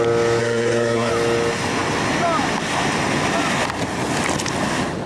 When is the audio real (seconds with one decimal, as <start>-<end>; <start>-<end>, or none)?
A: 0.0-0.4; 1.1-5.1

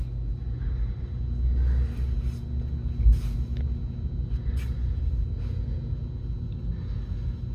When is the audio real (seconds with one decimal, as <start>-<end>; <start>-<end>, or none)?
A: 0.0-0.5; 1.0-4.8; 5.3-7.5

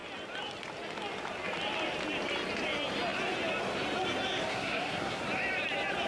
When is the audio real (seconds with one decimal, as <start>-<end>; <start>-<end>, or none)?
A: 0.0-4.5; 5.2-6.1

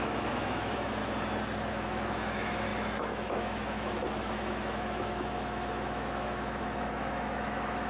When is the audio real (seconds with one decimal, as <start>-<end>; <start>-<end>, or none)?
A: 1.0-1.7